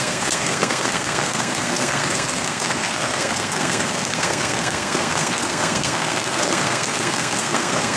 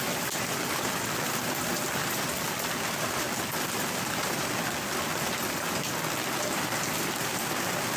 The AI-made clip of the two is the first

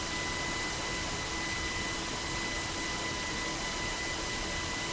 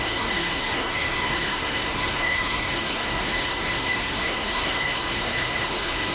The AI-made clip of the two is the second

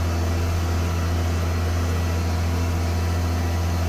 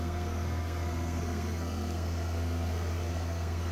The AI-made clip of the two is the second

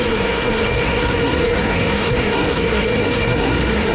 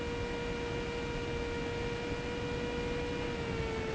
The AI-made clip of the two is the first